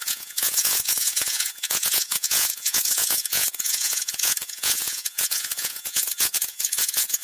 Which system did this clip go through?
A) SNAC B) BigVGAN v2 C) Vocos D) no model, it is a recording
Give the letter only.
C